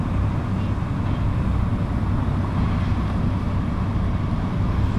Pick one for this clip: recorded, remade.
recorded